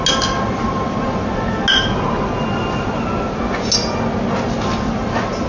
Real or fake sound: real